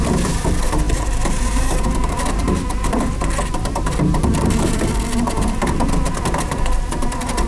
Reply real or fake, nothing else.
fake